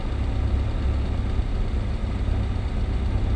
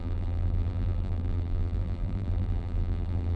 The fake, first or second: second